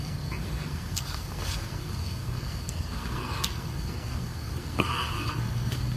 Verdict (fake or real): fake